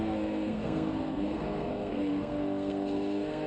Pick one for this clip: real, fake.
fake